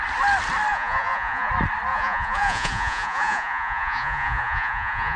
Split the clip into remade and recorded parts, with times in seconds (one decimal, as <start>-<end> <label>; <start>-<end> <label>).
0.0-0.7 recorded; 0.7-1.5 remade; 1.5-1.9 recorded; 1.9-5.2 remade